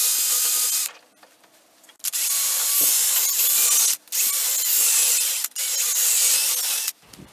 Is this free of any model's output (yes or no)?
yes